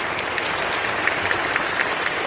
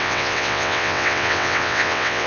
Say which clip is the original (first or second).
first